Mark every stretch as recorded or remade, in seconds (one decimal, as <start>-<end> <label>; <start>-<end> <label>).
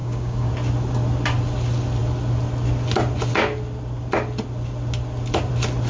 0.0-0.5 remade; 0.5-5.9 recorded